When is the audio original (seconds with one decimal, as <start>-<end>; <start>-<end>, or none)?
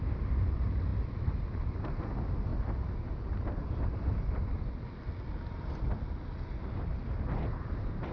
0.0-8.1